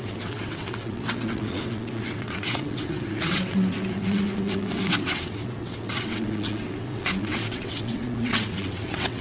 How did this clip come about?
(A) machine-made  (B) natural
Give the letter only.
A